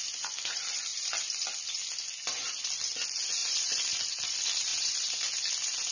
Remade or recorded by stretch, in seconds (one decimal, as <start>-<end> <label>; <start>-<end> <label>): 0.0-3.4 recorded; 3.4-4.0 remade; 4.0-4.7 recorded; 4.7-5.3 remade; 5.3-5.9 recorded